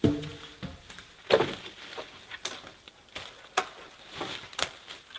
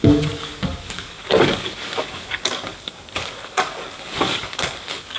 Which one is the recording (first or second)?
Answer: first